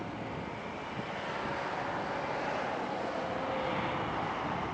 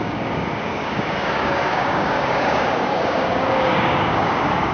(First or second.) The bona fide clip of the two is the first